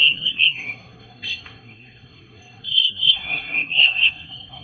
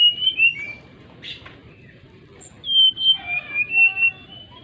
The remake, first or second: first